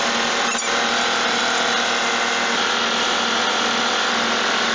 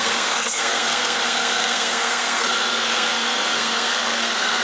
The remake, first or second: second